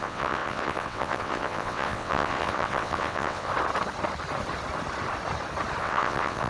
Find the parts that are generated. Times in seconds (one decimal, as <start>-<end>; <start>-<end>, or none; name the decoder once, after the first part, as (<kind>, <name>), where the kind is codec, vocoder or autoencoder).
0.0-3.5 (vocoder, WaveNeXt); 5.8-6.5